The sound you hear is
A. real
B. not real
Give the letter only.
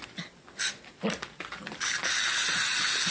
A